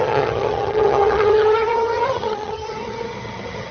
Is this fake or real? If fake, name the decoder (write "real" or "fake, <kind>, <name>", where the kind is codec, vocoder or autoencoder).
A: fake, vocoder, HiFi-GAN